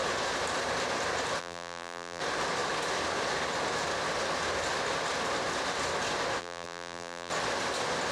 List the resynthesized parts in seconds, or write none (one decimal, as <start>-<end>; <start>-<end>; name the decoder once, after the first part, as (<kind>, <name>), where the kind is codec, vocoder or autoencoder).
1.4-2.2 (vocoder, BigVGAN v2); 6.4-7.3